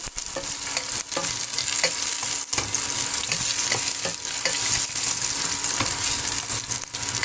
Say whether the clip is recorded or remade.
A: recorded